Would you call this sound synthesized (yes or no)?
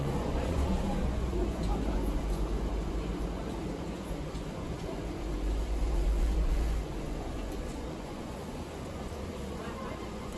yes